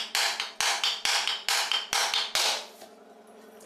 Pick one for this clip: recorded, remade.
recorded